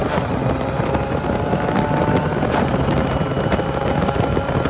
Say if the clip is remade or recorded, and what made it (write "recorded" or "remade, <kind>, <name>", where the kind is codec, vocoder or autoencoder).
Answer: remade, vocoder, BigVGAN v2